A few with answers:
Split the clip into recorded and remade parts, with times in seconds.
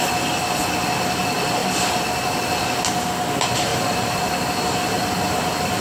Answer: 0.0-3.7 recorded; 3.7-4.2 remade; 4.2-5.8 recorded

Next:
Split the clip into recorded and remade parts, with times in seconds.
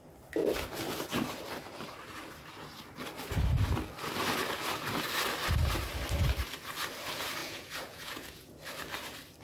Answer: 0.0-7.4 recorded; 7.4-8.5 remade; 8.5-9.4 recorded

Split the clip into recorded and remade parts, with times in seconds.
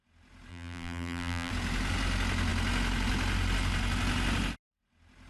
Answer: 0.0-0.5 recorded; 0.5-1.5 remade; 1.5-5.3 recorded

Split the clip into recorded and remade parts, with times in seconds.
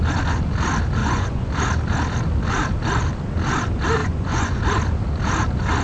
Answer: 0.0-1.0 recorded; 1.0-1.5 remade; 1.5-4.0 recorded; 4.0-4.6 remade; 4.6-5.8 recorded